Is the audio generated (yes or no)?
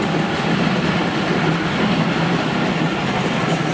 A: no